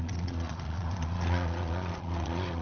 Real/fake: fake